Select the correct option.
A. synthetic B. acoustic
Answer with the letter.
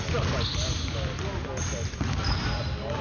B